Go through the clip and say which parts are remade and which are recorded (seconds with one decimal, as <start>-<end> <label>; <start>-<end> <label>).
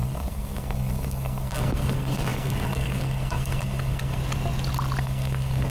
0.0-4.2 remade; 4.2-5.0 recorded; 5.0-5.7 remade